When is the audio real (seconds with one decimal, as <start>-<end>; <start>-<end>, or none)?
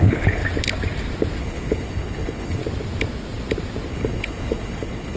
0.4-1.4; 2.6-3.9